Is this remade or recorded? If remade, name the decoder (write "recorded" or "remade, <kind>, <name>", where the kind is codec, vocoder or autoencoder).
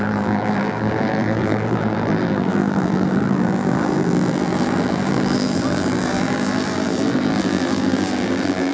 remade, vocoder, BigVGAN v2